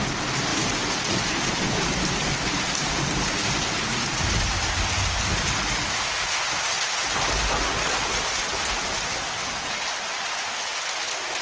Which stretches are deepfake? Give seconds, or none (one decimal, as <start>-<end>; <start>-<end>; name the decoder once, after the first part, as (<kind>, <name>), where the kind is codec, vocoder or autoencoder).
none